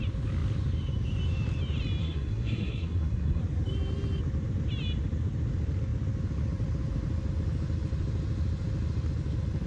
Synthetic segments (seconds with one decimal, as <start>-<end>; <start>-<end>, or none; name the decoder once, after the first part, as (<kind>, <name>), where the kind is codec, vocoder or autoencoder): 2.0-3.4 (codec, SNAC)

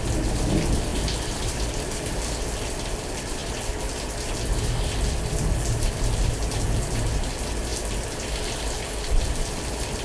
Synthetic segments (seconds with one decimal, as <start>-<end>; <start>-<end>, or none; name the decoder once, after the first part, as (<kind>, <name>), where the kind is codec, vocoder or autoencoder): 0.0-3.4 (vocoder, BigVGAN v2); 5.1-7.7; 9.3-10.0

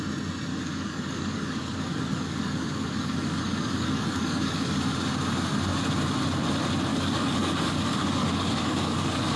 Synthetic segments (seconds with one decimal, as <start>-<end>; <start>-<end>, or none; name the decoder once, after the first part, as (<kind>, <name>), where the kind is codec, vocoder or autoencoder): 0.5-4.8 (codec, DAC); 6.9-9.4

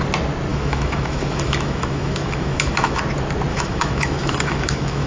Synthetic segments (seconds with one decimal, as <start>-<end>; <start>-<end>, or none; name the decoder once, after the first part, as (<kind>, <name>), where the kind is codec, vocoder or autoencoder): 0.5-3.0 (autoencoder, DAC-VAE); 3.5-5.1